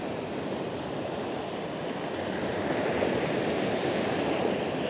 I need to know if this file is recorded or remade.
remade